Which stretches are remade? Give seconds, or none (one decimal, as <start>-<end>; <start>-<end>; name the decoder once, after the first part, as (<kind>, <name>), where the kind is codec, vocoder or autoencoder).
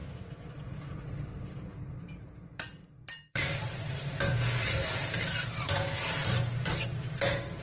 0.0-7.6 (vocoder, BigVGAN v2)